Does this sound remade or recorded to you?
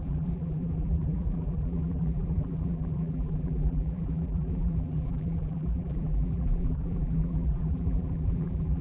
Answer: remade